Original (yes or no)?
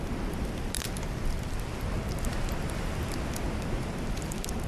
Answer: yes